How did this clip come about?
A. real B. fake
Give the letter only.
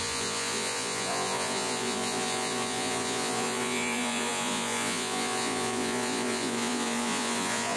B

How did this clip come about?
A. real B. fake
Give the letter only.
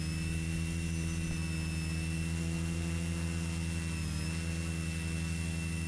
A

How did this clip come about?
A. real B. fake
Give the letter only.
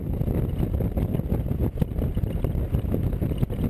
A